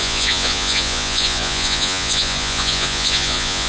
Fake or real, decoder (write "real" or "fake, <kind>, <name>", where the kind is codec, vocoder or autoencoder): fake, vocoder, Vocos